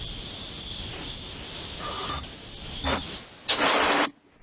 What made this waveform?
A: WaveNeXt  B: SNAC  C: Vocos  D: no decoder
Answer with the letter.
D